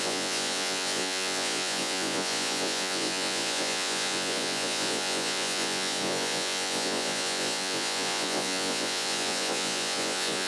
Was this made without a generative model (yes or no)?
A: no